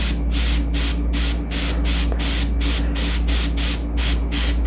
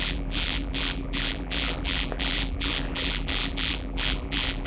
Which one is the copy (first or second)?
second